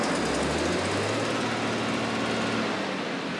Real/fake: real